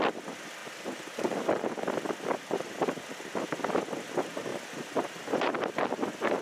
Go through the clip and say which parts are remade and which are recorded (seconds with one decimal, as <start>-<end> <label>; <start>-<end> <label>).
0.0-0.6 recorded; 0.6-1.7 remade; 1.7-4.5 recorded; 4.5-6.4 remade